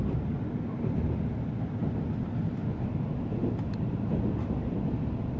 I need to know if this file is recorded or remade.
recorded